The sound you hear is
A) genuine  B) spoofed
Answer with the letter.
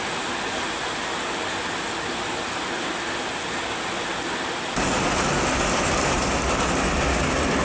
A